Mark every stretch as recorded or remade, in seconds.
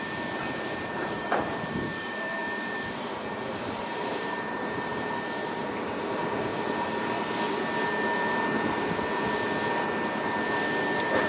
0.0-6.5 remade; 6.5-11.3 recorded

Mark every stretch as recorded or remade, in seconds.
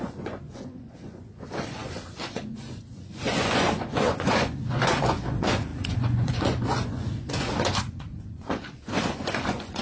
0.0-9.8 remade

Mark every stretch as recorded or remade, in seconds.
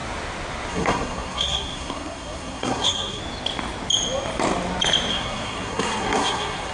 0.0-0.7 recorded; 0.7-3.2 remade; 3.2-5.1 recorded; 5.1-6.7 remade